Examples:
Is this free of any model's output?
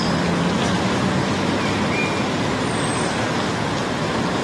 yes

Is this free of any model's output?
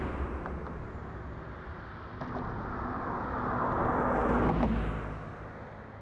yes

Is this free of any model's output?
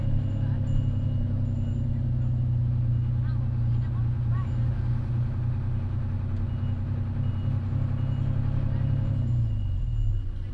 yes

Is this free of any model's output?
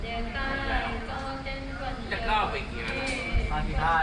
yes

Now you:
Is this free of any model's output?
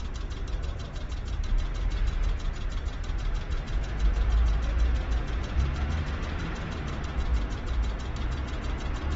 no